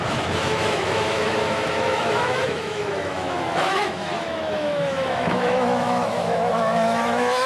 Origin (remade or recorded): remade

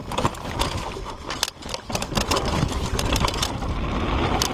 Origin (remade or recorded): recorded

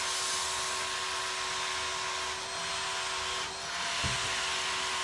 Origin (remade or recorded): recorded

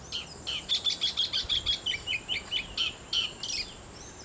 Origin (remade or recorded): recorded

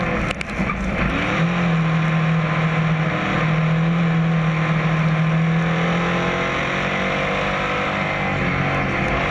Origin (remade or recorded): recorded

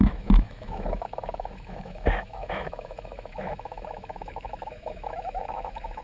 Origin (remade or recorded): remade